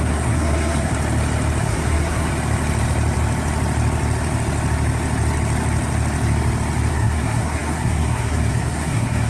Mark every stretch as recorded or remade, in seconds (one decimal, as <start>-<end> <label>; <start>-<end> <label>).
0.0-0.9 remade; 0.9-1.6 recorded; 1.6-2.3 remade; 2.3-6.9 recorded; 6.9-9.3 remade